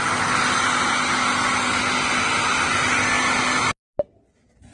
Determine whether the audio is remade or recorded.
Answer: recorded